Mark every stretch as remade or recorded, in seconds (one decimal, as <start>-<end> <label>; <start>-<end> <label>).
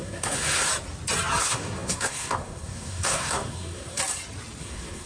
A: 0.0-0.7 remade; 0.7-1.4 recorded; 1.4-4.0 remade; 4.0-4.6 recorded; 4.6-5.1 remade